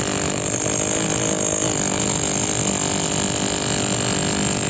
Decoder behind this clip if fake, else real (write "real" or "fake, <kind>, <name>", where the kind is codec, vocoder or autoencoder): real